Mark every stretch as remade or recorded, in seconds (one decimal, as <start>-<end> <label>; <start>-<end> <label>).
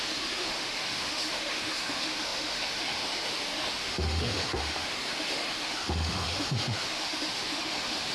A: 0.0-8.1 remade